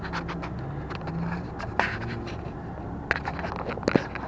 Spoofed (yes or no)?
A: no